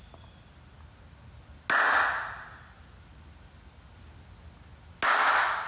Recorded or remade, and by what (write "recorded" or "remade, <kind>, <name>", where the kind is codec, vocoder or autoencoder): recorded